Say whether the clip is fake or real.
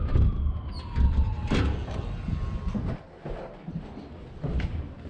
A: real